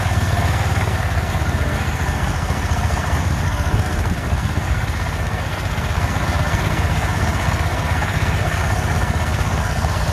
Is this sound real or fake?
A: fake